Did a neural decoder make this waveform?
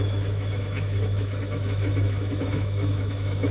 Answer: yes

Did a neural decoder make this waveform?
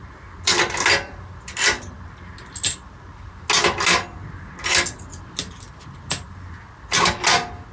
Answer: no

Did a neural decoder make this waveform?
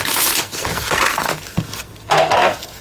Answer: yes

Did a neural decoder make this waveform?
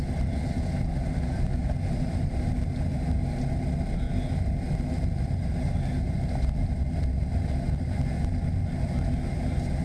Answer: no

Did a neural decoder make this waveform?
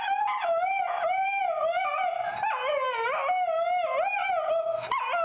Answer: no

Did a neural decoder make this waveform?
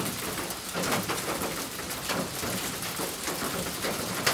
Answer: no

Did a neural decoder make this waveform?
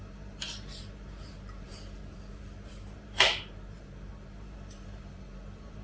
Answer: yes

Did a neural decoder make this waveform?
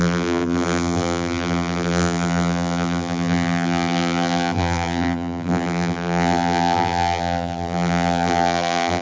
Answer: yes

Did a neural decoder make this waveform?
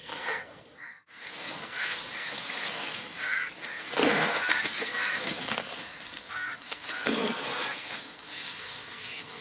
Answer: yes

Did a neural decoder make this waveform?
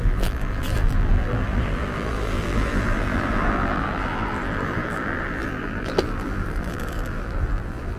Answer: yes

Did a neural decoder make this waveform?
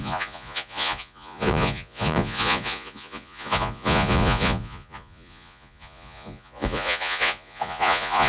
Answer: yes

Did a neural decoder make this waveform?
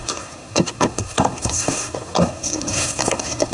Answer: yes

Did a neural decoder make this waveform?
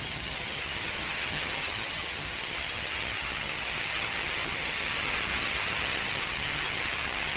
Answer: yes